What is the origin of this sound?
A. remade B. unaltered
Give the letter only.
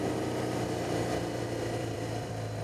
A